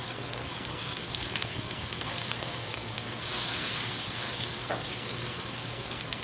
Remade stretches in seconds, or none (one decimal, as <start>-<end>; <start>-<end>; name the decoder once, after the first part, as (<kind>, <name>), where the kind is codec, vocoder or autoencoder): 0.0-6.2 (codec, SNAC)